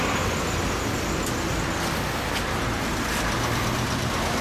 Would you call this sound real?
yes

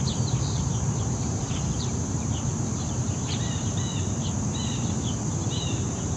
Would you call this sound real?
no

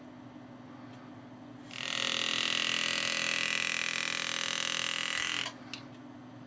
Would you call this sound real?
yes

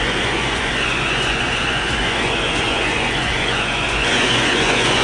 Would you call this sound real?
no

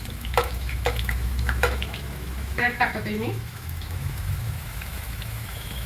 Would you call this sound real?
no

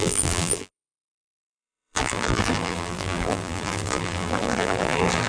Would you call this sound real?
no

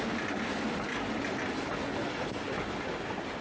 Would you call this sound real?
yes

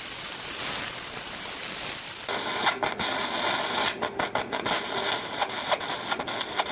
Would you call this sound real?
yes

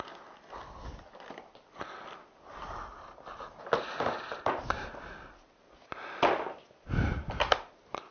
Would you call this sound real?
yes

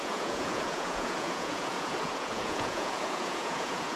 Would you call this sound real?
no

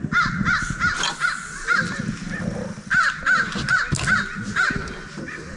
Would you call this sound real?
yes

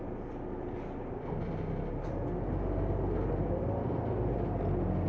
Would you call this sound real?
yes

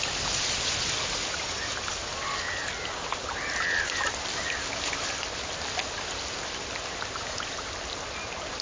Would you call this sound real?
yes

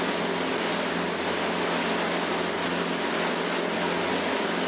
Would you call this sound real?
yes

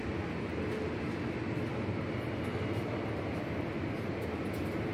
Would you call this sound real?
yes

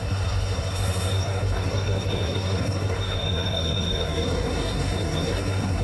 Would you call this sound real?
no